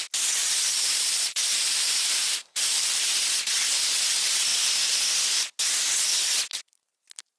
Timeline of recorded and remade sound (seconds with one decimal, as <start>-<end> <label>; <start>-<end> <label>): 0.0-0.4 recorded; 0.4-3.1 remade; 3.1-7.4 recorded